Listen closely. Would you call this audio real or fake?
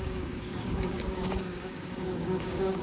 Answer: fake